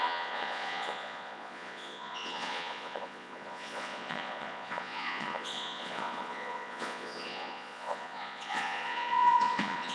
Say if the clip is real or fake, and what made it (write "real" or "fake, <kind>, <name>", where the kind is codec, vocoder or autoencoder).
fake, vocoder, Vocos